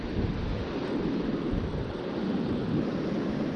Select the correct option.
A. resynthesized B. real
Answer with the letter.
B